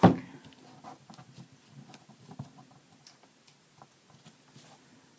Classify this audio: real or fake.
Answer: real